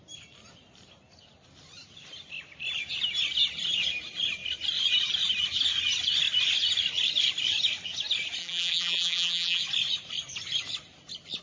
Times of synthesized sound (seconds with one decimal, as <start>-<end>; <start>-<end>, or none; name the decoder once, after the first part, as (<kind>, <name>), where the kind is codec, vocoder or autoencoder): 8.4-9.6 (vocoder, BigVGAN v2)